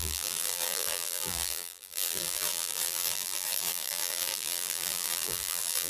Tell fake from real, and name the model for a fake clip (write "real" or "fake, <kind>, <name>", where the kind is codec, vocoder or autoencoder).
fake, vocoder, BigVGAN v2